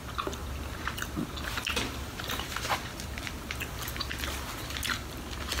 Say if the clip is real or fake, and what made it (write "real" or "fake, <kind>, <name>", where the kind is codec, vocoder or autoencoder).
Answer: real